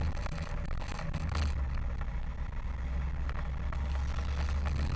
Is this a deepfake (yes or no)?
no